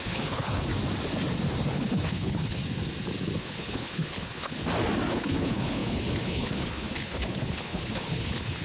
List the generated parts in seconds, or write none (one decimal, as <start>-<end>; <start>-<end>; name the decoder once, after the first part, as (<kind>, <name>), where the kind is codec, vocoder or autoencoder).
0.0-0.7 (codec, HILCodec); 1.7-2.6; 3.4-4.6; 5.1-8.6